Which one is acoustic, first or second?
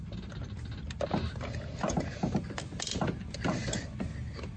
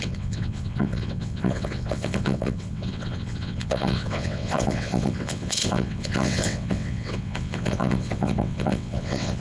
first